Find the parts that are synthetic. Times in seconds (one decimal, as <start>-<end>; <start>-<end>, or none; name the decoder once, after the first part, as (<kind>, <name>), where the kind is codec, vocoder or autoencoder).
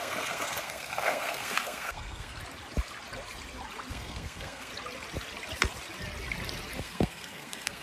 0.0-2.4 (codec, SNAC); 3.9-4.7; 6.8-7.8